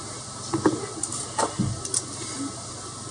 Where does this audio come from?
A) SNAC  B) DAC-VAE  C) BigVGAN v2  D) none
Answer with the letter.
D